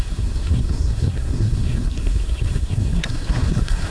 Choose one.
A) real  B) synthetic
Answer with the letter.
B